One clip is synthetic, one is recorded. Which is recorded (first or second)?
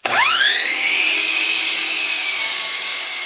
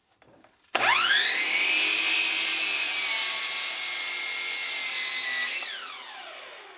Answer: second